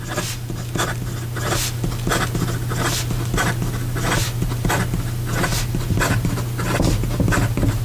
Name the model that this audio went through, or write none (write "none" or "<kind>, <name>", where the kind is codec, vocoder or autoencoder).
none